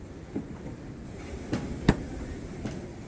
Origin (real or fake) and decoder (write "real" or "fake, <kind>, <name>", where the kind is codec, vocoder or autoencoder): real